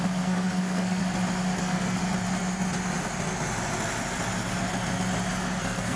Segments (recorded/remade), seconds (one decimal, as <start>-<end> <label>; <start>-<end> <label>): 0.0-1.0 remade; 1.0-1.6 recorded; 1.6-2.0 remade; 2.0-5.6 recorded; 5.6-6.0 remade

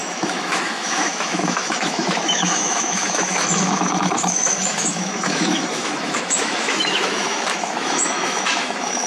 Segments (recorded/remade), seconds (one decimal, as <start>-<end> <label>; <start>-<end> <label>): 0.0-9.1 remade

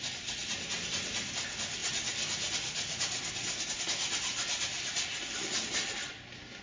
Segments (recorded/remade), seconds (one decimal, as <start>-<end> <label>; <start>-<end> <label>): 0.0-6.6 recorded

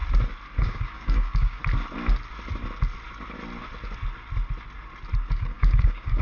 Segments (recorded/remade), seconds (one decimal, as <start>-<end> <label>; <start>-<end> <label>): 0.0-0.6 recorded; 0.6-1.6 remade; 1.6-5.3 recorded; 5.3-6.2 remade

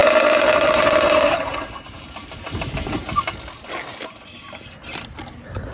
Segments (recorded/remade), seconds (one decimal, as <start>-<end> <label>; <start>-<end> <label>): 0.0-3.2 remade; 3.2-5.7 recorded

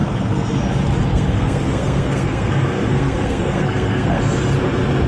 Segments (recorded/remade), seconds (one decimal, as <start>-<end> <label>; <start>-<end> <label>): 0.0-0.6 remade; 0.6-1.1 recorded; 1.1-4.2 remade; 4.2-5.1 recorded